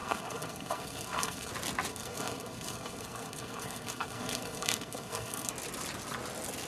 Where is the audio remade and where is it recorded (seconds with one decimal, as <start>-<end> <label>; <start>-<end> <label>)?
0.0-1.5 remade; 1.5-1.9 recorded; 1.9-5.5 remade; 5.5-6.7 recorded